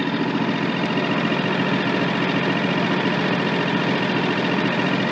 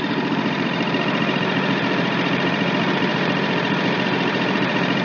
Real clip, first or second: first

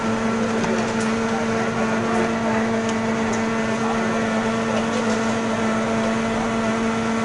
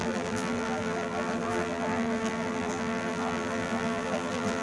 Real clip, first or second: first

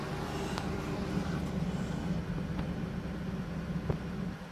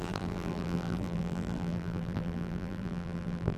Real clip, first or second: first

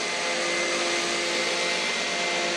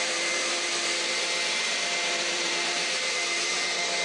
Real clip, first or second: first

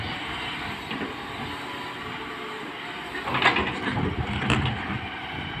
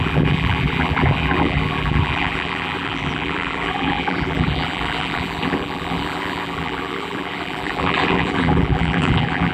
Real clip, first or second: first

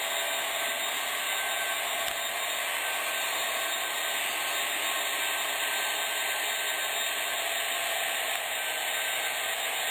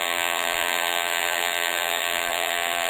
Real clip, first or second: first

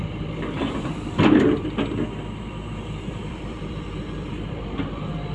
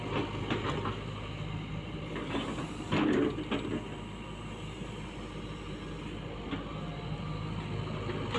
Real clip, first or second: second